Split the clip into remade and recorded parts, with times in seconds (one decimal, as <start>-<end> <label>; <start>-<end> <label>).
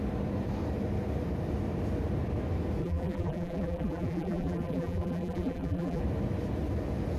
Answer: 0.0-2.8 recorded; 2.8-6.0 remade; 6.0-7.2 recorded